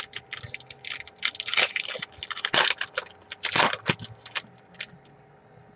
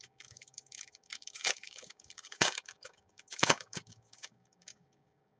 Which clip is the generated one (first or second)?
second